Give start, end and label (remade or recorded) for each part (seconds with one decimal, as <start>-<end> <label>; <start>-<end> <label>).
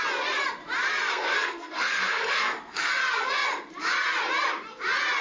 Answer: 0.0-1.1 recorded; 1.1-2.9 remade; 2.9-5.2 recorded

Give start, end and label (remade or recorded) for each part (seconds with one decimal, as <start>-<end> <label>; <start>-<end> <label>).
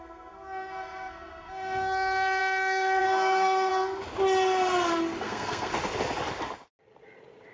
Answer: 0.0-3.7 remade; 3.7-5.2 recorded; 5.2-5.7 remade; 5.7-7.5 recorded